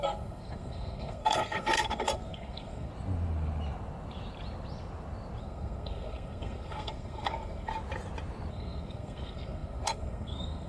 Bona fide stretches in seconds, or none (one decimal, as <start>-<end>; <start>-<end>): 2.9-5.4; 7.7-8.5